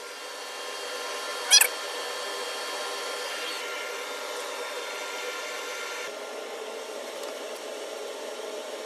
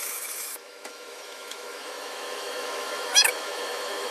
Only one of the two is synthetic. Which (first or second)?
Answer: second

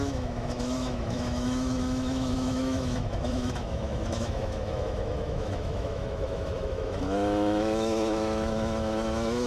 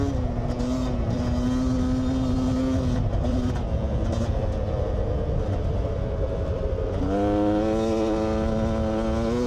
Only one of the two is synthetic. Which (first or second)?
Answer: first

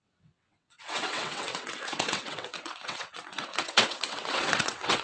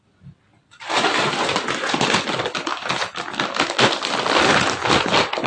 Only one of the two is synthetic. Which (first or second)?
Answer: first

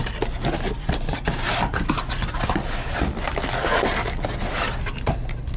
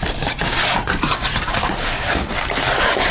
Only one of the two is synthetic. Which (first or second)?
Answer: second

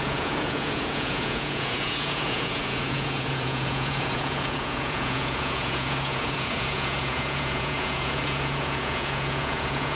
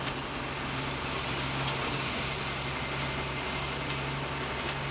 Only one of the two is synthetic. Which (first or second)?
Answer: first